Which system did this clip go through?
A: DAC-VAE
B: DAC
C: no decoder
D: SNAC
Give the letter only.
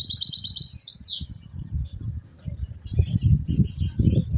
C